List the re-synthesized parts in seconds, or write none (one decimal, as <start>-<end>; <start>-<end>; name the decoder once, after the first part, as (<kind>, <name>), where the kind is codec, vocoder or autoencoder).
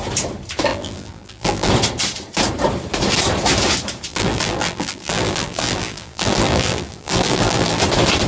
0.7-1.7 (vocoder, BigVGAN v2); 4.1-7.8